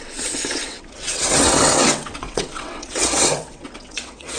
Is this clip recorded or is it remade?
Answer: remade